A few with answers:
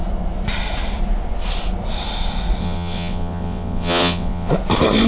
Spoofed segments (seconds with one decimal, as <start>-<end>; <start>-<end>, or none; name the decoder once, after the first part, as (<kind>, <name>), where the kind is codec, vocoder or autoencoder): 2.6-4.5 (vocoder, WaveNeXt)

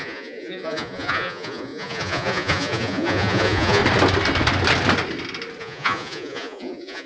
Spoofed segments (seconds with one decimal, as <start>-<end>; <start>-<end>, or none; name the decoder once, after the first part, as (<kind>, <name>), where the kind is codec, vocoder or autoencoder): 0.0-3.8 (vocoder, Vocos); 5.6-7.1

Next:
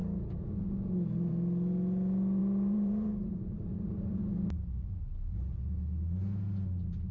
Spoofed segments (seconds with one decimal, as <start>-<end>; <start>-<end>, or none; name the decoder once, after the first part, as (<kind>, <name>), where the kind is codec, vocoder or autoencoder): 2.4-4.2 (vocoder, BigVGAN v2)

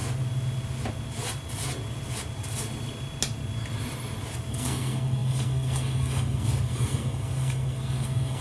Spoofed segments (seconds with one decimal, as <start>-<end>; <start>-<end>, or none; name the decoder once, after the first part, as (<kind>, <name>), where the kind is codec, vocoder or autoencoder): 4.5-8.4 (codec, SNAC)